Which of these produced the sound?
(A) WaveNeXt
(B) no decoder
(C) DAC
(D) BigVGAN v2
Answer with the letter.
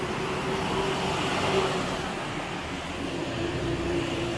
B